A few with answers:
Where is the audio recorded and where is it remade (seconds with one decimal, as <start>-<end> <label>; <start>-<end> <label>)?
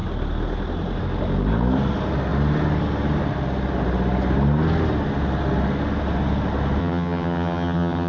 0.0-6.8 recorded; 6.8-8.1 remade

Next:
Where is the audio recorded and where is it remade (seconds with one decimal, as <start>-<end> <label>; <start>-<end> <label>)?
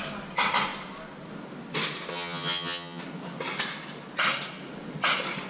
0.0-2.1 recorded; 2.1-3.0 remade; 3.0-5.5 recorded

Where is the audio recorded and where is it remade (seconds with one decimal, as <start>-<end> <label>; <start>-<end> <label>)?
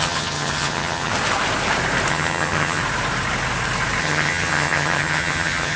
0.0-1.1 remade; 1.1-2.1 recorded; 2.1-2.8 remade; 2.8-4.0 recorded; 4.0-5.8 remade